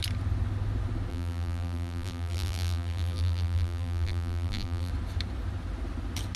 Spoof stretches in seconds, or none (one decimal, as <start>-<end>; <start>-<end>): 1.1-4.9